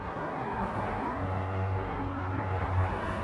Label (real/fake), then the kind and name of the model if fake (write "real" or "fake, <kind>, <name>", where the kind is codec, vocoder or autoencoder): fake, codec, SNAC